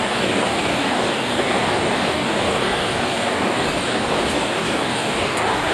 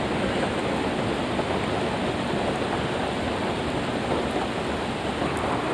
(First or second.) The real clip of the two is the second